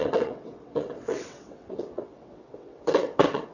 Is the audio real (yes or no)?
no